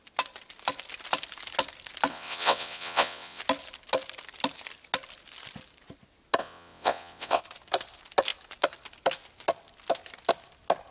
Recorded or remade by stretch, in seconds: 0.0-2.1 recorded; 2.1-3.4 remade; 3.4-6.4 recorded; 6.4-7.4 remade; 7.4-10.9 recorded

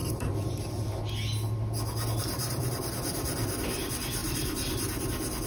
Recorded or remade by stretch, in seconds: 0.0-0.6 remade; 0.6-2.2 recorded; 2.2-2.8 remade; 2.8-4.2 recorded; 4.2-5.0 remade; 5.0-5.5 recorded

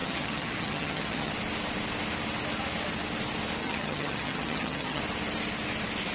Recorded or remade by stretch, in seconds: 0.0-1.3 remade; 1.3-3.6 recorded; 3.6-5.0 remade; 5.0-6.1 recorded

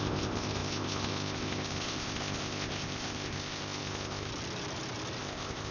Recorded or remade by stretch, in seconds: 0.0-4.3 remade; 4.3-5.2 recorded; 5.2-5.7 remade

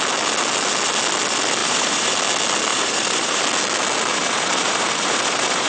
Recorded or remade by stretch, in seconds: 0.0-1.6 recorded; 1.6-2.1 remade; 2.1-2.7 recorded; 2.7-3.4 remade; 3.4-4.1 recorded; 4.1-5.7 remade